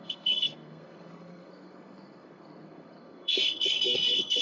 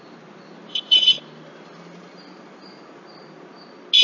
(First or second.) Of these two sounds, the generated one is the first